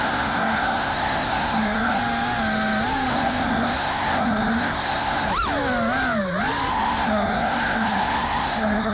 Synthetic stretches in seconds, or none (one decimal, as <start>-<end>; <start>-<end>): 0.0-2.0; 3.1-5.3; 6.7-8.9